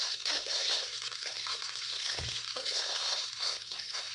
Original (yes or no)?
no